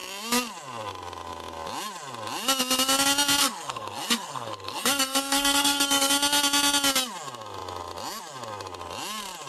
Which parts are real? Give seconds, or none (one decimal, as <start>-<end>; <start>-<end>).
0.0-3.4; 6.1-9.5